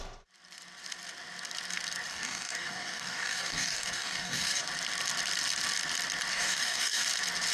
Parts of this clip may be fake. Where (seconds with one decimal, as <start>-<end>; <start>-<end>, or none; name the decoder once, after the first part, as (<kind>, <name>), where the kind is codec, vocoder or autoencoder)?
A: 2.1-4.7 (codec, DAC); 6.3-7.0